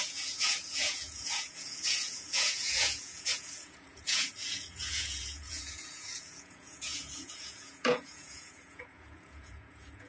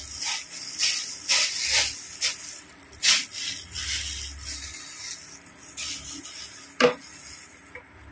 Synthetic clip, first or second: first